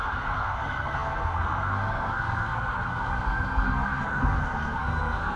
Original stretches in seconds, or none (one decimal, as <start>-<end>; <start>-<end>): none